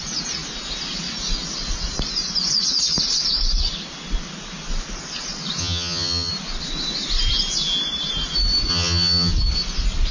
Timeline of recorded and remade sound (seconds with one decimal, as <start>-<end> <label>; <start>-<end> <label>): 0.0-5.6 recorded; 5.6-6.3 remade; 6.3-8.7 recorded; 8.7-9.3 remade; 9.3-10.1 recorded